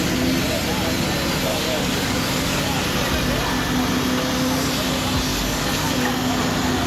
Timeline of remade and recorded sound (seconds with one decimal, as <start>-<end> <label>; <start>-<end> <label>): 0.0-1.5 recorded; 1.5-2.6 remade; 2.6-5.3 recorded; 5.3-5.9 remade; 5.9-6.9 recorded